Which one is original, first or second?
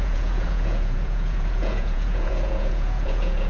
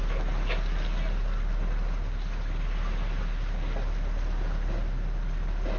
second